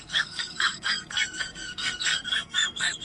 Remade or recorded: remade